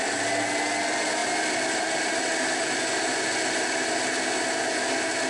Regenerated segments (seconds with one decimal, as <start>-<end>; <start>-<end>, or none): none